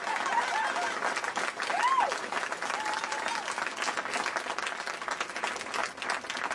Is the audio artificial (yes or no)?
no